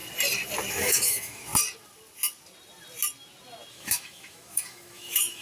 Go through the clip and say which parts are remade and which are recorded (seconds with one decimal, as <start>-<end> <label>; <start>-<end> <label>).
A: 0.0-0.7 recorded; 0.7-1.5 remade; 1.5-3.7 recorded; 3.7-5.4 remade